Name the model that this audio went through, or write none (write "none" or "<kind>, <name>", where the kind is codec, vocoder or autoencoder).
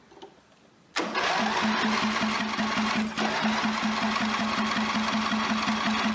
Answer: none